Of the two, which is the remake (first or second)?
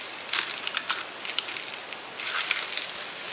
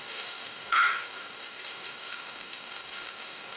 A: second